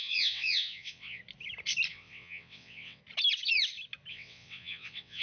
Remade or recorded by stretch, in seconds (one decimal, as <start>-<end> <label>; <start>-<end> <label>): 0.0-1.2 remade; 1.2-1.9 recorded; 1.9-3.0 remade; 3.0-4.1 recorded; 4.1-5.2 remade

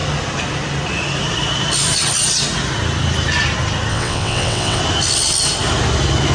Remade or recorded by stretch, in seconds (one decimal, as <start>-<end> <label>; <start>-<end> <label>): 0.0-3.9 recorded; 3.9-4.8 remade; 4.8-6.3 recorded

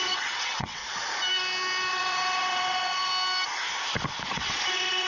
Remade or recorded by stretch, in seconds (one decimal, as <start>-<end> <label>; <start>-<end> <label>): 0.0-0.8 remade; 0.8-1.9 recorded; 1.9-3.1 remade; 3.1-4.3 recorded; 4.3-5.1 remade

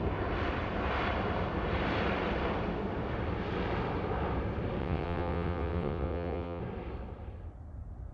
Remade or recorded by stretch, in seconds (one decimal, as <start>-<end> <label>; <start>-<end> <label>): 0.0-4.8 recorded; 4.8-6.6 remade; 6.6-8.1 recorded